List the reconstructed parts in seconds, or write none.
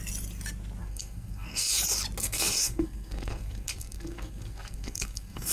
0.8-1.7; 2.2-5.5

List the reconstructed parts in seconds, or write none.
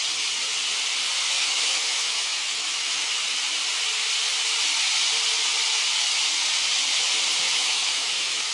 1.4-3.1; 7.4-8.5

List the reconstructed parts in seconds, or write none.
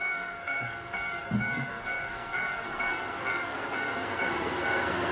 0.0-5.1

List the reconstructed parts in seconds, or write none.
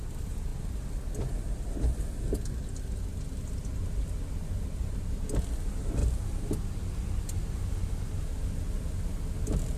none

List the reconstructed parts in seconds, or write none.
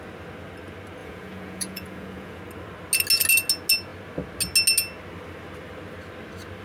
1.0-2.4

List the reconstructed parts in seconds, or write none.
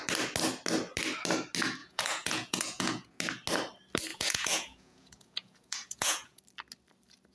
1.8-3.1; 4.1-6.4